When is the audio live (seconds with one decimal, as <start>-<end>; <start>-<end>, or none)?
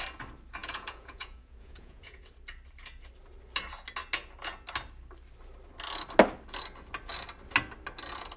0.0-0.6; 2.2-8.4